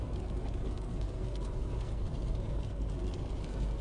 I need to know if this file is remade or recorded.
remade